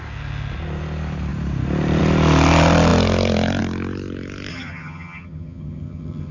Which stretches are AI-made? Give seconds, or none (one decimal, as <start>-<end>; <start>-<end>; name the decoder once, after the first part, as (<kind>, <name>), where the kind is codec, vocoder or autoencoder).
4.5-6.3 (vocoder, HiFi-GAN)